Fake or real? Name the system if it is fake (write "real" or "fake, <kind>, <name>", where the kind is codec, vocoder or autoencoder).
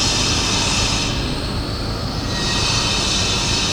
real